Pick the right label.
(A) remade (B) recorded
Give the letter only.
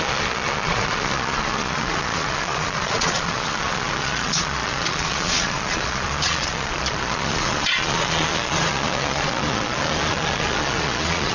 A